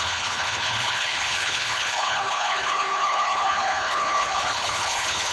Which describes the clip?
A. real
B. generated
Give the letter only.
B